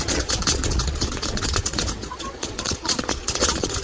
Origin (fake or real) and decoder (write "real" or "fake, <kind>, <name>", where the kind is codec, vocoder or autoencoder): fake, vocoder, Vocos